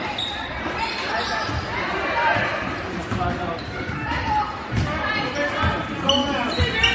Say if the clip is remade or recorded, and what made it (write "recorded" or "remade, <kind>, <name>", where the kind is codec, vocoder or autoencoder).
recorded